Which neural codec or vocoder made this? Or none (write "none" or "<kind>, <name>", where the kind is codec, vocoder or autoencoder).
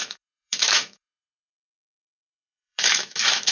autoencoder, DAC-VAE